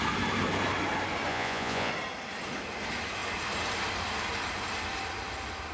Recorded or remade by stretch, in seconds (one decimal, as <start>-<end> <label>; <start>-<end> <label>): 0.0-1.3 recorded; 1.3-1.9 remade; 1.9-5.7 recorded